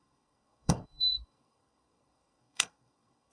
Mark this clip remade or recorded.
remade